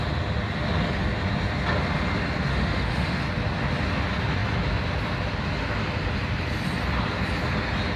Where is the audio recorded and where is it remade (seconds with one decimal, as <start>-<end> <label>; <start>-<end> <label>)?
0.0-2.5 recorded; 2.5-3.2 remade; 3.2-8.0 recorded